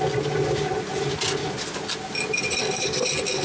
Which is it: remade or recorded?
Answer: recorded